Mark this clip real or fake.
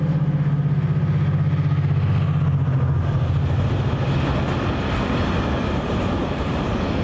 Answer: real